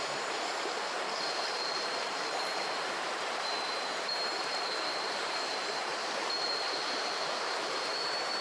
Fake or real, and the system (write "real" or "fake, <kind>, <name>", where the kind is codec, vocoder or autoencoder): fake, vocoder, BigVGAN v2